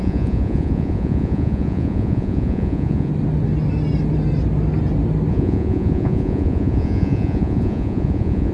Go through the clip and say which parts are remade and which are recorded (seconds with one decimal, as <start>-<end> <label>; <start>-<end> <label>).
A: 0.0-3.1 remade; 3.1-5.3 recorded; 5.3-8.5 remade

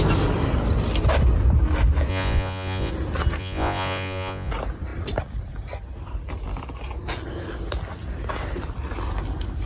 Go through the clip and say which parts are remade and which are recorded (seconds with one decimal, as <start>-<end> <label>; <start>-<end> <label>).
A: 0.0-2.1 recorded; 2.1-2.9 remade; 2.9-3.4 recorded; 3.4-4.5 remade; 4.5-9.7 recorded